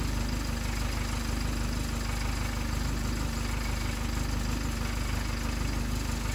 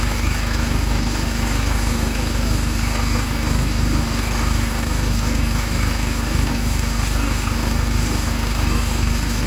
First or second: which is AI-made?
second